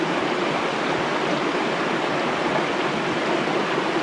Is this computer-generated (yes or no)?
no